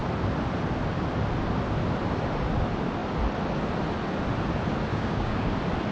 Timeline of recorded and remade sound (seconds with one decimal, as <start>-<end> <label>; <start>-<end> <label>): 0.0-4.9 recorded; 4.9-5.5 remade; 5.5-5.9 recorded

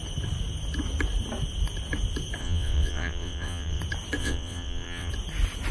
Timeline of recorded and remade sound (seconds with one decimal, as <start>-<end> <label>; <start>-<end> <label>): 0.0-2.4 recorded; 2.4-3.8 remade; 3.8-4.2 recorded; 4.2-5.1 remade; 5.1-5.7 recorded

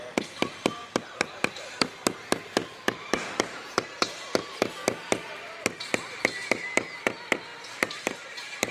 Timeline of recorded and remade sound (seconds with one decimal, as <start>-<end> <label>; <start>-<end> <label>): 0.0-0.8 recorded; 0.8-1.9 remade; 1.9-2.6 recorded; 2.6-4.0 remade; 4.0-7.5 recorded; 7.5-8.7 remade

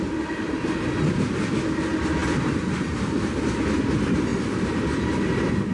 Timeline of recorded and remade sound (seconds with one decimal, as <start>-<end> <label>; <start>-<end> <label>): 0.0-5.7 recorded

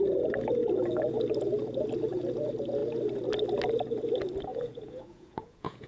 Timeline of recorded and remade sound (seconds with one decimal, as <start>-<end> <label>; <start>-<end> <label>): 0.0-4.5 recorded; 4.5-5.9 remade

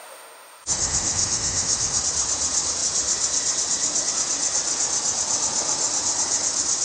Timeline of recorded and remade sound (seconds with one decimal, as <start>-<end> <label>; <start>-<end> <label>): 0.0-2.0 remade; 2.0-6.8 recorded

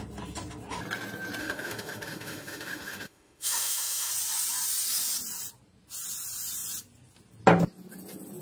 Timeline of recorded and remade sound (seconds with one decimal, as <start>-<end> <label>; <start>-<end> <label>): 0.0-1.4 recorded; 1.4-4.1 remade; 4.1-8.4 recorded